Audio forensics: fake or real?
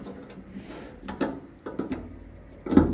real